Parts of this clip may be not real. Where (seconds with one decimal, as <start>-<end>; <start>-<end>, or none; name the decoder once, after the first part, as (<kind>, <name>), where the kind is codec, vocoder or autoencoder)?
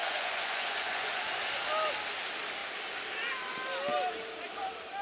0.0-1.4 (vocoder, Vocos)